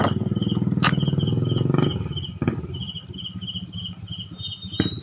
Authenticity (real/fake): real